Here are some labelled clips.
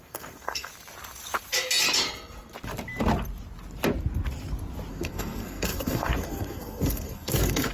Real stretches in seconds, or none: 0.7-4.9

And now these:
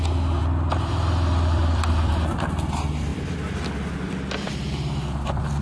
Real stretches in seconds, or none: 0.0-0.4; 2.1-3.1; 4.5-5.6